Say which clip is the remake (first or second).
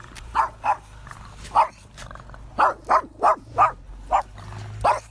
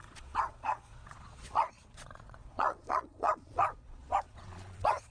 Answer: second